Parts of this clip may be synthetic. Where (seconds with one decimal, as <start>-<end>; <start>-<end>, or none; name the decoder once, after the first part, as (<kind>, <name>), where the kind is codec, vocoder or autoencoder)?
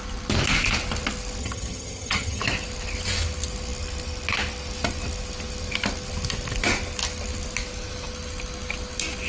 1.4-2.4 (vocoder, HiFi-GAN)